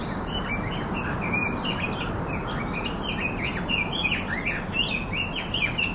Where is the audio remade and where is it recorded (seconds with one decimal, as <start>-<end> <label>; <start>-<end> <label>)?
0.0-5.9 recorded